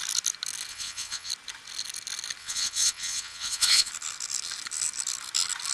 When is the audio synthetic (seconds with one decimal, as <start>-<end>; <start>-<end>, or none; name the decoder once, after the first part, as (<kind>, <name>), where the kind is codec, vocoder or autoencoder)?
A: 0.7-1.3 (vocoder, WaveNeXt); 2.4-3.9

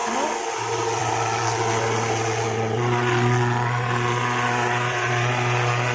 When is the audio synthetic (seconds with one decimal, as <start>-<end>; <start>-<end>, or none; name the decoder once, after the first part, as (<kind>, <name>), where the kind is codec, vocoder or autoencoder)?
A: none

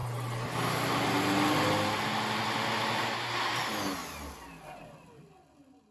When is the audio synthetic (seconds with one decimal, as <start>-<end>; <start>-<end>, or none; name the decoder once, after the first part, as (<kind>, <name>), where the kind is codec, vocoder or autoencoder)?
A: none